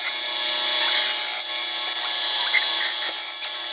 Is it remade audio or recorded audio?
recorded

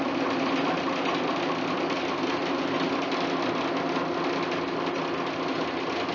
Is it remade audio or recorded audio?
recorded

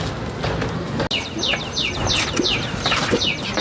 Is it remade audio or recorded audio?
recorded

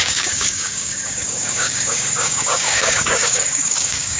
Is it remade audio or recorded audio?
remade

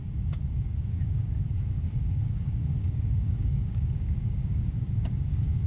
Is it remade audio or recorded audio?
remade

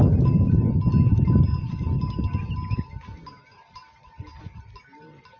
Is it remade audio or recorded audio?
recorded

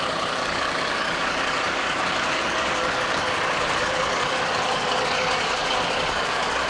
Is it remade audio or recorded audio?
remade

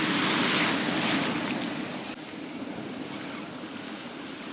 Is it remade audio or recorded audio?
recorded